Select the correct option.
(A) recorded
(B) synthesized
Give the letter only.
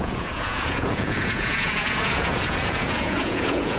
B